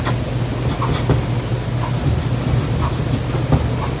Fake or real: real